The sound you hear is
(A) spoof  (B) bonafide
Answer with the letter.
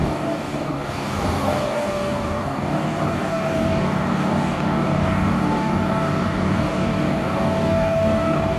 A